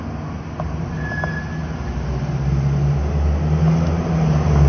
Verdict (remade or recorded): recorded